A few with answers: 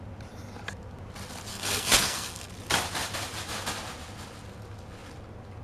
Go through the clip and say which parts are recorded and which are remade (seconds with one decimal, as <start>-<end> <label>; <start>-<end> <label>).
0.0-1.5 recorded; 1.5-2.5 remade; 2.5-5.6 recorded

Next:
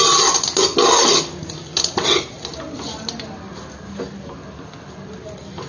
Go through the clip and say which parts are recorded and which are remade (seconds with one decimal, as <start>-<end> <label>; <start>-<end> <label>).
0.0-5.7 recorded

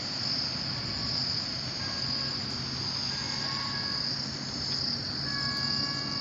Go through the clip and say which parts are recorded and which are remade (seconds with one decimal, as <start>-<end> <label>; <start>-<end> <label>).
0.0-6.2 recorded

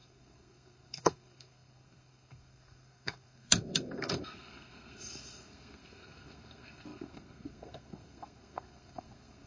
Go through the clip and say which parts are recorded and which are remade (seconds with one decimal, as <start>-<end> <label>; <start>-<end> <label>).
0.0-9.5 remade

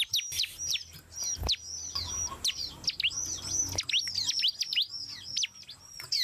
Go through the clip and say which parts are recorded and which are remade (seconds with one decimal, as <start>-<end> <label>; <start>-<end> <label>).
0.0-6.2 recorded

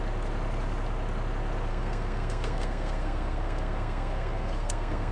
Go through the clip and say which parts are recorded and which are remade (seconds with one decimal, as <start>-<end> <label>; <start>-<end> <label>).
0.0-1.7 recorded; 1.7-5.1 remade

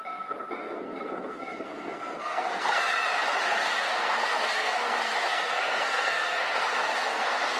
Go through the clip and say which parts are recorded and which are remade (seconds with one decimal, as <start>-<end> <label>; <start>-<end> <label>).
0.0-2.9 remade; 2.9-3.4 recorded; 3.4-7.6 remade